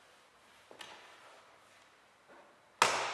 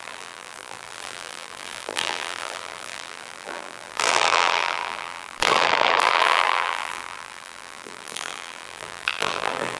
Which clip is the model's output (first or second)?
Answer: second